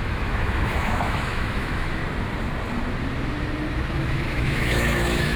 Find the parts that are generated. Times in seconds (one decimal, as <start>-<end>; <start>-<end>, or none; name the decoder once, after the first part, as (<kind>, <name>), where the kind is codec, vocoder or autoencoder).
0.0-2.0 (autoencoder, DAC-VAE); 3.9-5.4